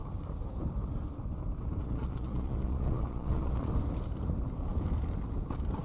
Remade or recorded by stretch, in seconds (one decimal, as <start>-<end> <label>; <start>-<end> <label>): 0.0-1.8 recorded; 1.8-3.7 remade; 3.7-5.8 recorded